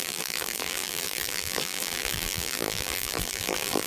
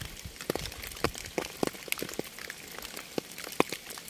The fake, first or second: first